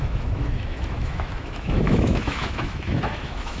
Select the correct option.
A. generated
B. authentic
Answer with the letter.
A